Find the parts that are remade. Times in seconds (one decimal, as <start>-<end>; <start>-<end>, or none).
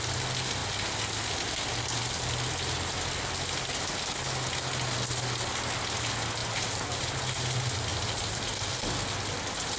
6.4-7.1; 7.9-8.4